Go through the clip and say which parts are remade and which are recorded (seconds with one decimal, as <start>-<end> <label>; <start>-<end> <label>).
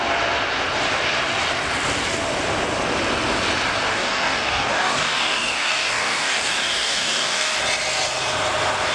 0.0-3.9 recorded; 3.9-7.6 remade; 7.6-8.9 recorded